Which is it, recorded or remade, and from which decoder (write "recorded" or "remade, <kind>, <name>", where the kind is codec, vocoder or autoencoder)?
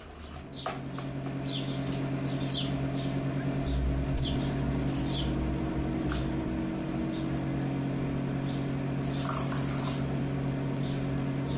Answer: recorded